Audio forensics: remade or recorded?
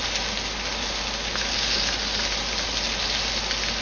recorded